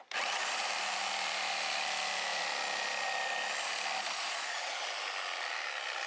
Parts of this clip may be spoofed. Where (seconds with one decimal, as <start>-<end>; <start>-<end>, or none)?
none